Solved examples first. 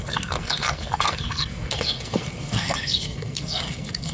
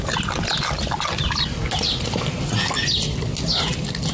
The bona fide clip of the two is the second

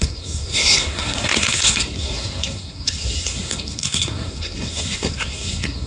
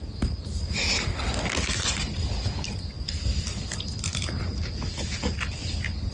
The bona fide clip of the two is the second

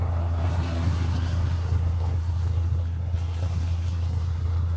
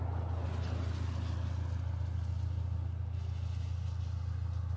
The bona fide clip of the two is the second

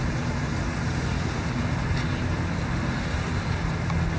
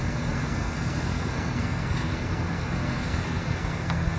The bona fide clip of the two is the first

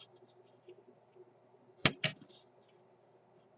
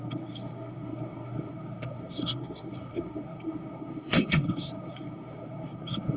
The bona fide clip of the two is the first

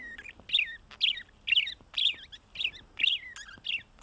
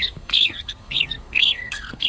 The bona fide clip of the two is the first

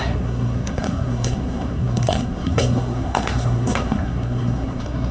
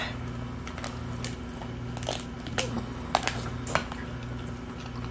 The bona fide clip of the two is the second